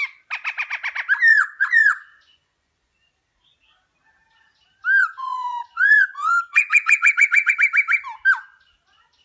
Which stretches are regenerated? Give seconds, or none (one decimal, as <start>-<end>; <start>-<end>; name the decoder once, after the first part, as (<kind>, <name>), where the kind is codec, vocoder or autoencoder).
1.3-3.1 (vocoder, Vocos); 5.0-7.5